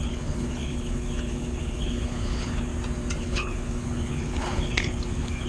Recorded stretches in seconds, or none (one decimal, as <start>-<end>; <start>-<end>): 2.7-3.2

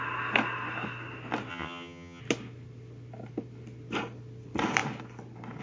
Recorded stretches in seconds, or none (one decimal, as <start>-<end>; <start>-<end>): 0.0-1.5; 2.2-5.6